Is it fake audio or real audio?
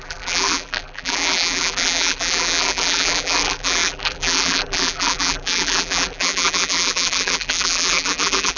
fake